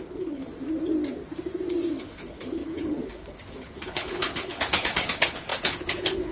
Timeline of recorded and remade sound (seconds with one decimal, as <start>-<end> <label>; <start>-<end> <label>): 0.0-0.5 remade; 0.5-2.0 recorded; 2.0-6.3 remade